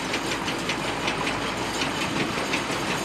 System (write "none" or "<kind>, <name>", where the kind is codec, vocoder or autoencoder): none